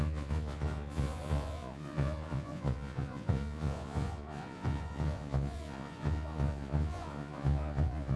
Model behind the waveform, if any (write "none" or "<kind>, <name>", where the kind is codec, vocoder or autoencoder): vocoder, Vocos